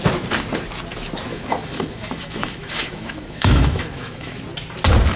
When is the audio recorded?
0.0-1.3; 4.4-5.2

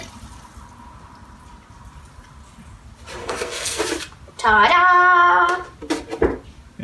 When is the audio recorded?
0.0-3.2; 3.8-6.8

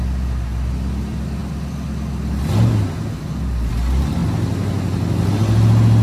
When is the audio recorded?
0.0-6.0

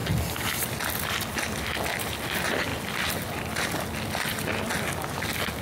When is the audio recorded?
0.0-5.6

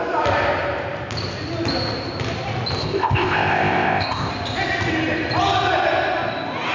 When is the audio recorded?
0.0-2.8; 4.3-6.7